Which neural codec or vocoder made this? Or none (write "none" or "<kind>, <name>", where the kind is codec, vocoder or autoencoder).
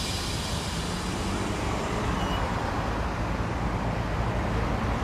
none